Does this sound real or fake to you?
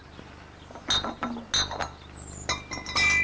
real